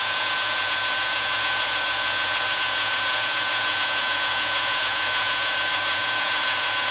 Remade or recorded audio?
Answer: remade